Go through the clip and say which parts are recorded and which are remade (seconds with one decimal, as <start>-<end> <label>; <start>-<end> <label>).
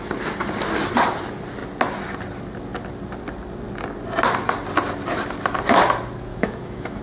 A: 0.0-6.3 recorded; 6.3-7.0 remade